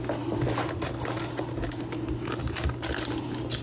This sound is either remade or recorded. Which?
recorded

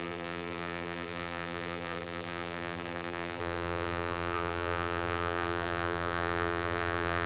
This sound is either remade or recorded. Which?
remade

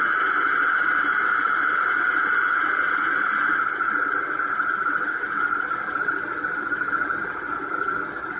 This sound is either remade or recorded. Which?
recorded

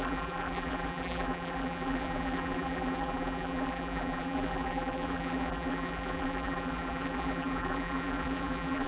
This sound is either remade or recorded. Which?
remade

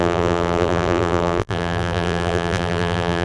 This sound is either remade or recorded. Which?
remade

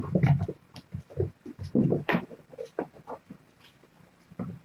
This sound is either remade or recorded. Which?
remade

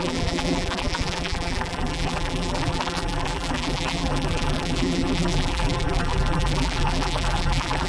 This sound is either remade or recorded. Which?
remade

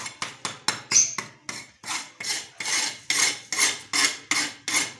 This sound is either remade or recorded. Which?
recorded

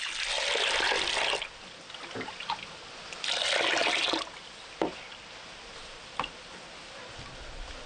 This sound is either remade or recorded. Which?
recorded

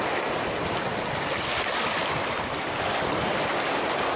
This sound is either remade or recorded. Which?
recorded